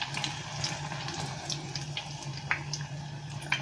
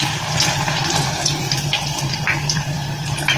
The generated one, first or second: second